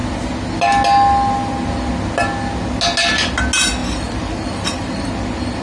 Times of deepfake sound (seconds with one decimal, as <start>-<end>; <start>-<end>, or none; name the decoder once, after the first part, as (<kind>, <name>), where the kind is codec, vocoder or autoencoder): 3.8-5.1 (vocoder, BigVGAN v2)